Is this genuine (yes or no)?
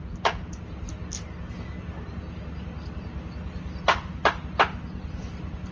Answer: yes